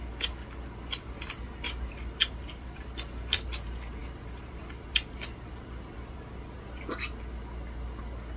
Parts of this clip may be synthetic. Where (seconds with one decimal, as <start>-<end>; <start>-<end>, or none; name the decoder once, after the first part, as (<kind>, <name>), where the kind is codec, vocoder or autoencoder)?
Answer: none